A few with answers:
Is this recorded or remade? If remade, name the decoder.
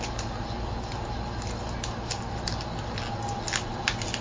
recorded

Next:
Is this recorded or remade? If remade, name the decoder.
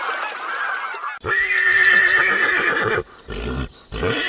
recorded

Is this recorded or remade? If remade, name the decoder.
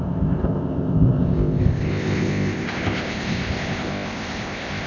remade, codec, ZipCodec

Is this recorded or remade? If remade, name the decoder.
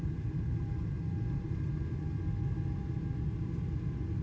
recorded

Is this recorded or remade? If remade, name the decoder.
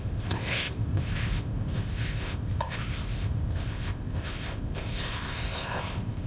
remade, codec, ZipCodec